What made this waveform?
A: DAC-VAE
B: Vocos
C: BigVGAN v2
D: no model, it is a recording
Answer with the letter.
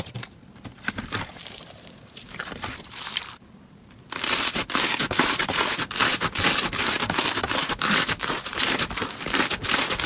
C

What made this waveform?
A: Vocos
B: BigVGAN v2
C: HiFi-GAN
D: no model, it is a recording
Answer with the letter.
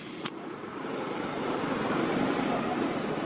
B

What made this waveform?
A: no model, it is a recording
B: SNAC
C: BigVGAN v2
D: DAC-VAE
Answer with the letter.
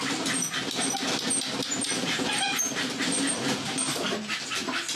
A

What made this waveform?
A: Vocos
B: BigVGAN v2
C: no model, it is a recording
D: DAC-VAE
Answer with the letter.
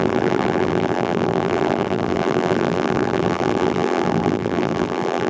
B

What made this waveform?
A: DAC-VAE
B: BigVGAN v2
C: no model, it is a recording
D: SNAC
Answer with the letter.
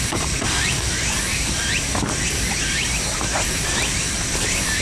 B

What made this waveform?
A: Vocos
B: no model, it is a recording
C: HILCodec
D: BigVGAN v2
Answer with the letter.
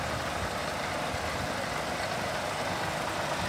B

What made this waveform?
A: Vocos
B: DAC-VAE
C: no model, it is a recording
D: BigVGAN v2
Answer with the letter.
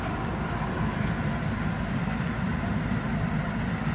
C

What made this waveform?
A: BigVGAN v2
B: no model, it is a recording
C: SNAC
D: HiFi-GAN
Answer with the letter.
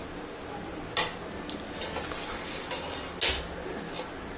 B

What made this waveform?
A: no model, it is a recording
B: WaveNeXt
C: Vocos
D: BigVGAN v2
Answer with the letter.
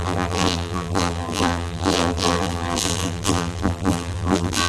D